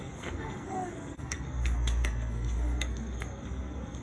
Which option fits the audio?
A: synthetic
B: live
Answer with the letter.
A